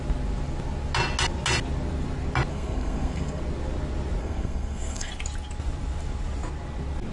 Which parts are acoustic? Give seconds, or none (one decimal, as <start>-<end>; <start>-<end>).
0.0-2.5; 3.4-4.2; 5.1-7.1